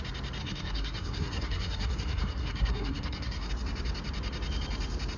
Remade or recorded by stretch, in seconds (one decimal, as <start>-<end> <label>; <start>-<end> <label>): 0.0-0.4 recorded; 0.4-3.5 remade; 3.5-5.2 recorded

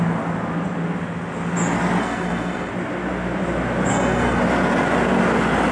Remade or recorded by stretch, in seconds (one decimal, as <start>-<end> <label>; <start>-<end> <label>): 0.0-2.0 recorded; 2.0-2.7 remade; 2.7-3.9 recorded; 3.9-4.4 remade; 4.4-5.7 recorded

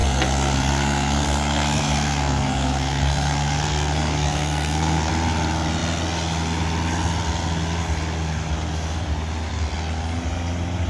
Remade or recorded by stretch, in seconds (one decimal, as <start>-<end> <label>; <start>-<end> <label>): 0.0-5.1 remade; 5.1-10.9 recorded